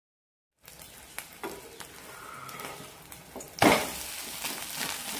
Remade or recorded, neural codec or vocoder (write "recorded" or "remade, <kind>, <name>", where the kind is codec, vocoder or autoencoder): recorded